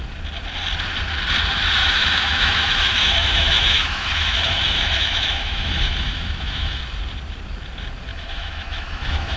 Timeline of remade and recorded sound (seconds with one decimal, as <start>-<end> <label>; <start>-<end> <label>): 0.0-1.8 recorded; 1.8-6.8 remade; 6.8-8.1 recorded; 8.1-9.4 remade